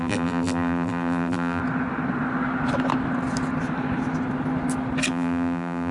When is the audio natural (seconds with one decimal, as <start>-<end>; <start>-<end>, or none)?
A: 1.6-5.1